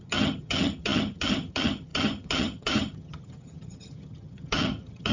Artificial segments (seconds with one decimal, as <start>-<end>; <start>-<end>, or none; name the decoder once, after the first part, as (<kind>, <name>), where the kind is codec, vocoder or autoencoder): 0.0-5.1 (vocoder, HiFi-GAN)